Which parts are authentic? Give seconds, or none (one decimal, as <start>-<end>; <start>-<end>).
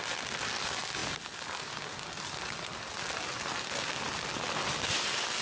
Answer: 0.0-5.4